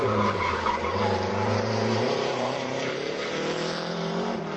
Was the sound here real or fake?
fake